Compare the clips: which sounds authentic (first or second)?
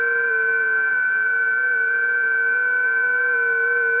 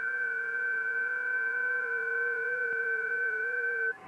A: first